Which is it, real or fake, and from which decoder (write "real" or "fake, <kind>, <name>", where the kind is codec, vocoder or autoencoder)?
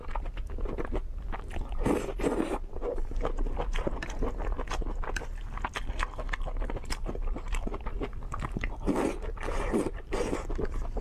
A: real